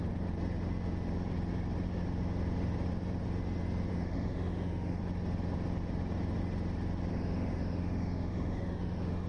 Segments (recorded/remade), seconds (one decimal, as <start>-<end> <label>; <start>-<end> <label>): 0.0-3.9 recorded; 3.9-5.0 remade; 5.0-7.1 recorded; 7.1-9.3 remade